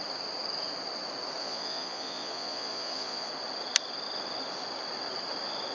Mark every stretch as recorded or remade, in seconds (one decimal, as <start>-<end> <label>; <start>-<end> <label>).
0.0-1.4 recorded; 1.4-3.3 remade; 3.3-5.7 recorded

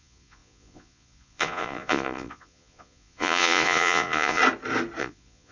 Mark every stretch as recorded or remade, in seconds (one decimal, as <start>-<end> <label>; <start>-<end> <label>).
0.0-4.4 remade; 4.4-5.0 recorded; 5.0-5.5 remade

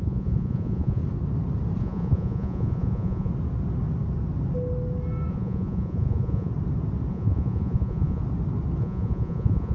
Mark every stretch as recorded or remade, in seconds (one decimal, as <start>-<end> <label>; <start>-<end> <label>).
0.0-1.0 remade; 1.0-1.8 recorded; 1.8-3.3 remade; 3.3-5.3 recorded; 5.3-6.5 remade; 6.5-7.1 recorded; 7.1-8.2 remade; 8.2-8.8 recorded; 8.8-9.7 remade

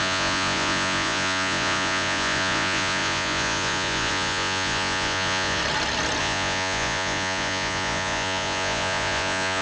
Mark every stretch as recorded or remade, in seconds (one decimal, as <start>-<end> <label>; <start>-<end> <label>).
0.0-5.6 remade; 5.6-6.2 recorded; 6.2-9.6 remade

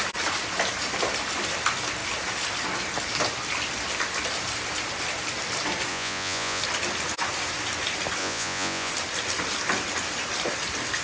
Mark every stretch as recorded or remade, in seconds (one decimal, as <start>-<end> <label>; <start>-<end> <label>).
0.0-5.9 recorded; 5.9-6.6 remade; 6.6-8.2 recorded; 8.2-8.9 remade; 8.9-11.0 recorded

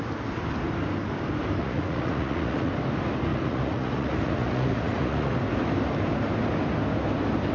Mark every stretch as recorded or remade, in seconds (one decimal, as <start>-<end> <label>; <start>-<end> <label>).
0.0-1.6 recorded; 1.6-2.7 remade; 2.7-3.3 recorded; 3.3-5.3 remade; 5.3-7.5 recorded